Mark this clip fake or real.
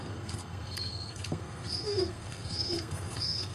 fake